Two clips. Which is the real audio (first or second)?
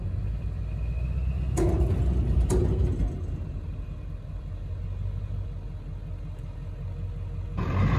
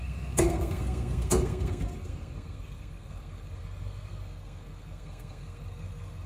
first